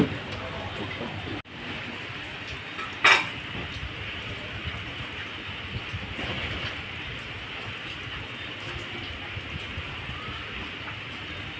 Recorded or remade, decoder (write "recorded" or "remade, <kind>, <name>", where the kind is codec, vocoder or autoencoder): recorded